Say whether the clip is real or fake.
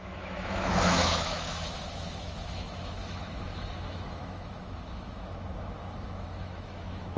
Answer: fake